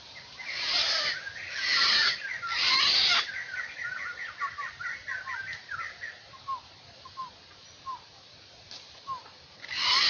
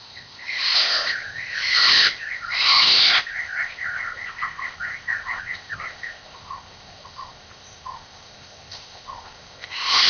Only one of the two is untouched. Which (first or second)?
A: first